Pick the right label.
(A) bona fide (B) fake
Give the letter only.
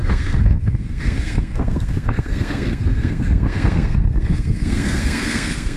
B